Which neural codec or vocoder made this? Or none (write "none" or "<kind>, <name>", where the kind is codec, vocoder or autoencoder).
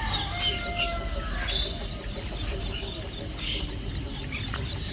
none